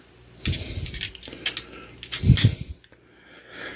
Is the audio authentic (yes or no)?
yes